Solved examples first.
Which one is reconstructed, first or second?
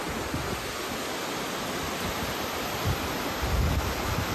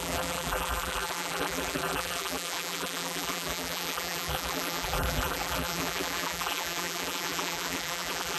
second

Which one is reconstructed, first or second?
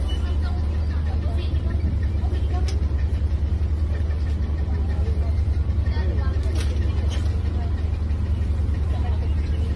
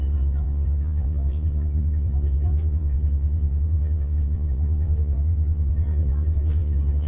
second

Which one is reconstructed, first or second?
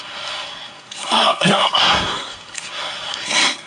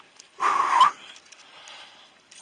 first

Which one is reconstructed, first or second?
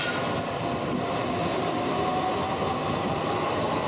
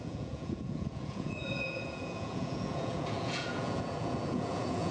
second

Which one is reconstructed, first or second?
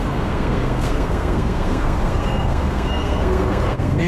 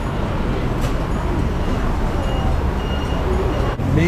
first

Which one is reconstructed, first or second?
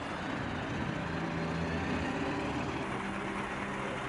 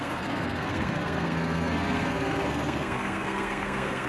second